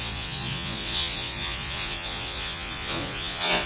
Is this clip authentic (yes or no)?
no